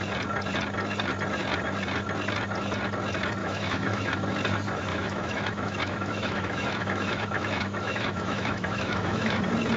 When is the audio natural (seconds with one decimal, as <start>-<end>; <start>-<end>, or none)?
0.0-3.4; 4.1-4.9; 9.4-9.8

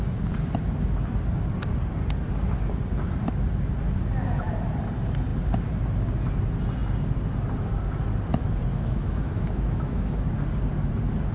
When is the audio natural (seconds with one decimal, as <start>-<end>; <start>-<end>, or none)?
0.0-8.7; 10.2-11.3

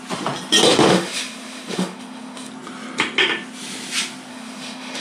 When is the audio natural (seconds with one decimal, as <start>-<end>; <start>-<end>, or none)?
0.0-0.8; 2.5-4.3

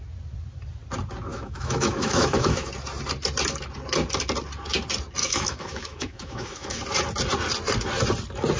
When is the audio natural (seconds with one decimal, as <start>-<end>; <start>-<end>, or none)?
0.0-1.3; 2.7-5.2; 6.8-8.6